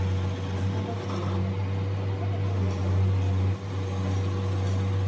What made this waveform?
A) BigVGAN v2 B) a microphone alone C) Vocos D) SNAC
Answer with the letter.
B